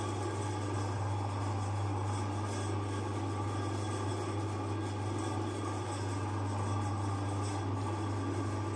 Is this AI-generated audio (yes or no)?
no